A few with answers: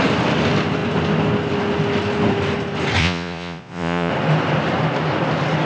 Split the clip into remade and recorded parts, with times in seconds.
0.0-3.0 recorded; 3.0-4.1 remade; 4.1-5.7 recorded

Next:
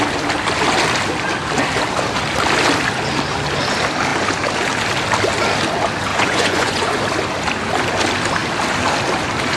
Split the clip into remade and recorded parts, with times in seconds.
0.0-6.1 recorded; 6.1-7.0 remade; 7.0-9.6 recorded

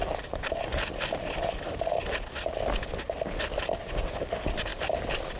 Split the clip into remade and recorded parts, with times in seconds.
0.0-0.6 remade; 0.6-4.7 recorded; 4.7-5.4 remade

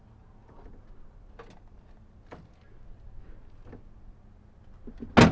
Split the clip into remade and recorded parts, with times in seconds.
0.0-5.3 recorded

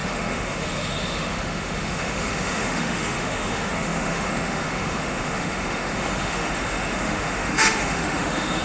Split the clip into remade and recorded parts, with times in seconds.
0.0-8.6 remade

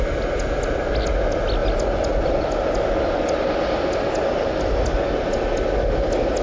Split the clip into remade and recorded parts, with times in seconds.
0.0-6.4 recorded

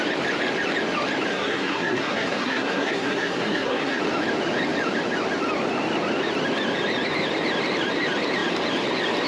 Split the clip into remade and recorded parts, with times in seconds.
0.0-1.3 recorded; 1.3-4.0 remade; 4.0-9.3 recorded